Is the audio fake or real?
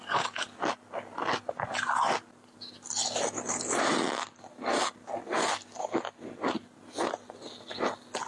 real